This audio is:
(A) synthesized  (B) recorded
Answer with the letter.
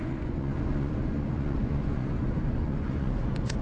A